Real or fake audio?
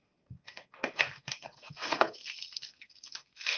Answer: fake